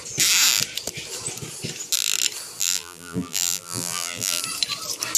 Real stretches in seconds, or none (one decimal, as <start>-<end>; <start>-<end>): 0.0-2.6; 4.4-5.2